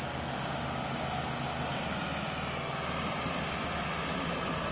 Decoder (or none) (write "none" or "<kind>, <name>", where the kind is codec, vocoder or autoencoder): none